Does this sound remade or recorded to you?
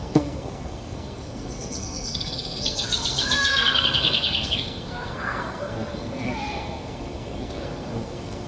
remade